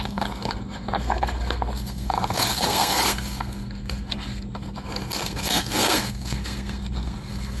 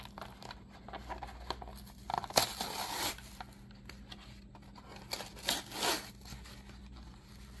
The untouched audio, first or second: second